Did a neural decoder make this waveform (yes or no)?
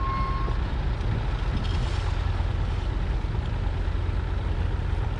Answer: no